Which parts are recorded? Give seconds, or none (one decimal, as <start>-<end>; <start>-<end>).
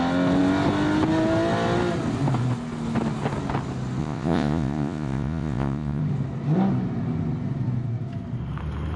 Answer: 0.0-4.0; 6.0-9.0